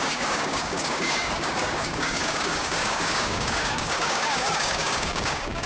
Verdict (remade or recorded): remade